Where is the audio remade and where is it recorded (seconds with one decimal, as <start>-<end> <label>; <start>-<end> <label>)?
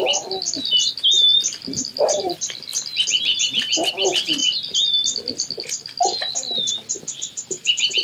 0.0-8.0 recorded